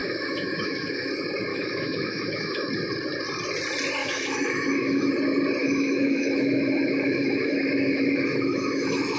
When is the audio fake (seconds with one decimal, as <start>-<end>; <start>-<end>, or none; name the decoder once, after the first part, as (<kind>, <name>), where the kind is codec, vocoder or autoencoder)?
0.0-1.1 (autoencoder, DAC-VAE); 1.5-2.7; 4.0-5.1; 5.6-9.2